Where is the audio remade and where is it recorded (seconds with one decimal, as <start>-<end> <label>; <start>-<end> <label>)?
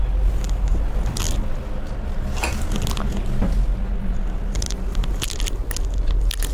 0.0-6.5 recorded